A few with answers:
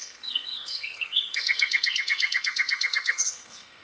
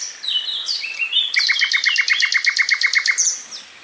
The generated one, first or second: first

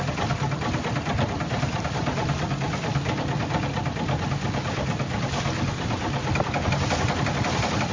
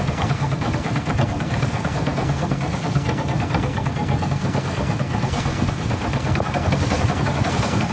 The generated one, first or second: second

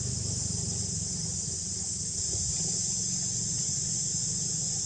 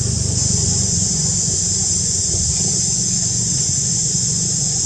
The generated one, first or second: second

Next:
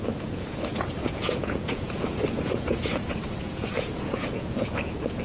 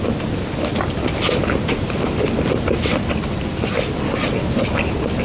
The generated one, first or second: first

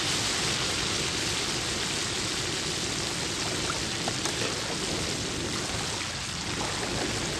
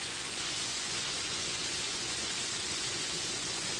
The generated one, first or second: second